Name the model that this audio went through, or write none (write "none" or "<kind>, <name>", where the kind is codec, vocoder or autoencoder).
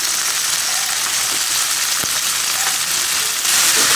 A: none